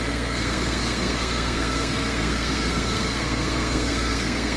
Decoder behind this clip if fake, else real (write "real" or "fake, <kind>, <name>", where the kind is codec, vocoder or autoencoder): fake, codec, SNAC